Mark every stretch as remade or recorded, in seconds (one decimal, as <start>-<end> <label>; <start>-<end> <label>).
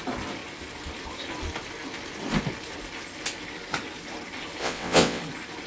0.0-4.6 recorded; 4.6-5.2 remade; 5.2-5.7 recorded